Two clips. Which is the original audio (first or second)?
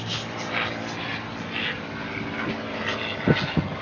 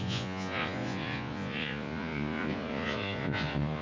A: first